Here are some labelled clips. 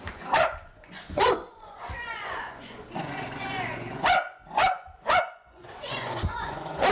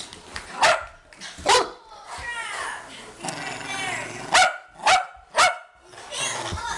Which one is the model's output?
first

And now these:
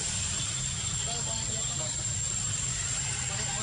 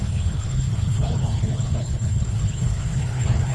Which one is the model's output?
second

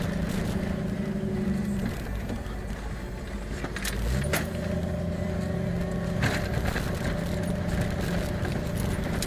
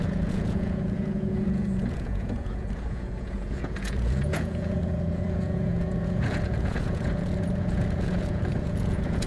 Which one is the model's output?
second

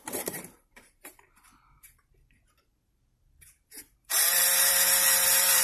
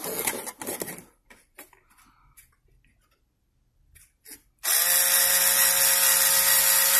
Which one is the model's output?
first